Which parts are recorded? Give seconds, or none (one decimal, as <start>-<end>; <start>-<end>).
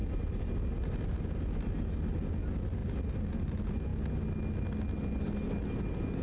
0.0-6.2